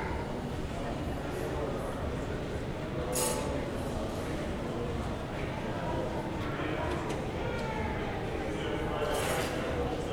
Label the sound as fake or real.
real